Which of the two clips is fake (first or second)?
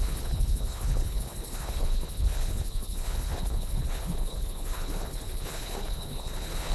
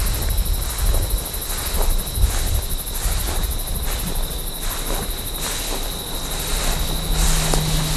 first